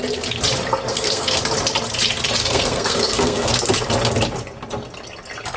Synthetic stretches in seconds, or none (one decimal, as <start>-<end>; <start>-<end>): 0.9-1.4; 2.4-3.5